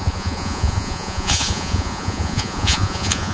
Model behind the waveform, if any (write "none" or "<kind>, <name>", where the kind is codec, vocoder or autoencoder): vocoder, Vocos